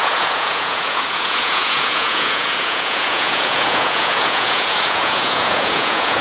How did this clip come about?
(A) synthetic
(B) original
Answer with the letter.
A